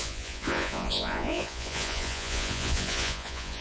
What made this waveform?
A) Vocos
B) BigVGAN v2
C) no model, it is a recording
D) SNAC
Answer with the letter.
A